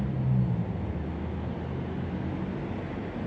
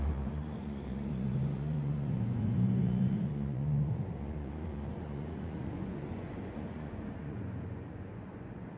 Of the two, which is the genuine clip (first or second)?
first